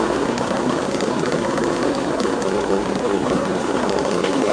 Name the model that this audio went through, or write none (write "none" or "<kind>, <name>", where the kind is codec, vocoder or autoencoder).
codec, SNAC